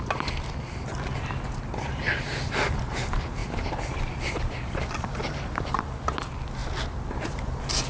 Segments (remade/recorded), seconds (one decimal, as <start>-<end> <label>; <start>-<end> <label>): 0.0-7.9 recorded